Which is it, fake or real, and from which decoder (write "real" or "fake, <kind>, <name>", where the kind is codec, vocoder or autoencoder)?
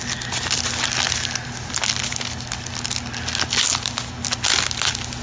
real